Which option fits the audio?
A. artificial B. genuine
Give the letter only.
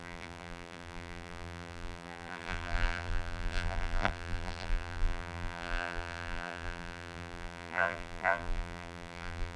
A